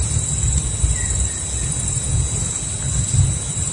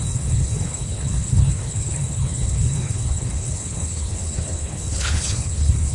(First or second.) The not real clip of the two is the second